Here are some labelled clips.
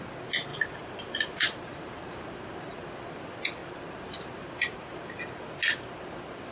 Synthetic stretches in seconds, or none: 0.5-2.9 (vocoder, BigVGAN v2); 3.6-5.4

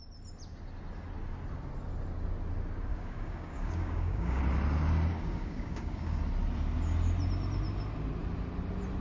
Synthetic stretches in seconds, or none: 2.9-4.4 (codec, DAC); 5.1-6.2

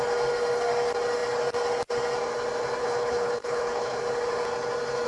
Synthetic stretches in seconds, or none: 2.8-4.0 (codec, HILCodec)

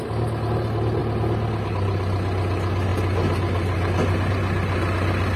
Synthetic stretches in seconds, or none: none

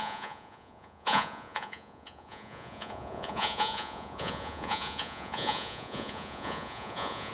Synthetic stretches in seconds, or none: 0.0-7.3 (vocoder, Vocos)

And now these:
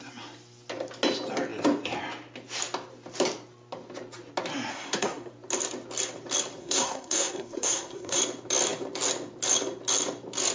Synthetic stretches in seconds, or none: 4.7-5.3 (codec, SNAC); 6.6-8.2

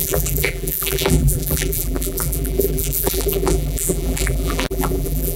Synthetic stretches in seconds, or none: 0.0-5.4 (vocoder, BigVGAN v2)